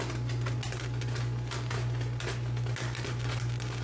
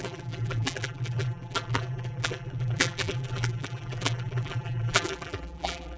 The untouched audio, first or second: first